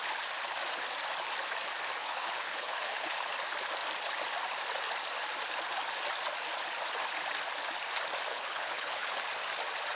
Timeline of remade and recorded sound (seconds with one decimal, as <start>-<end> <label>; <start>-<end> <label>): 0.0-2.0 recorded; 2.0-3.3 remade; 3.3-8.3 recorded; 8.3-9.2 remade; 9.2-10.0 recorded